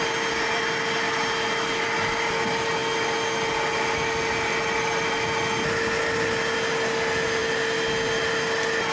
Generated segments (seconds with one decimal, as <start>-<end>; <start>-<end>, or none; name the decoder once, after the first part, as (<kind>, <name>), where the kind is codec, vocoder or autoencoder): none